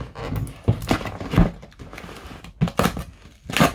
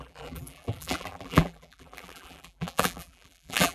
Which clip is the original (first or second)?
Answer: first